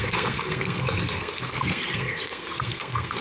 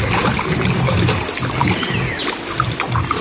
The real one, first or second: second